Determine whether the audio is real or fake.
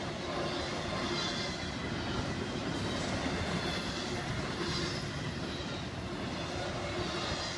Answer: real